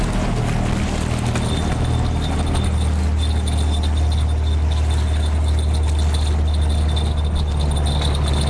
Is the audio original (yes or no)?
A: yes